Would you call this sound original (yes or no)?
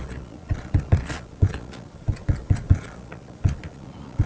no